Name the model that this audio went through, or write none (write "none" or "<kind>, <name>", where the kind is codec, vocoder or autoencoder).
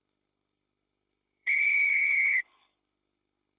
codec, HILCodec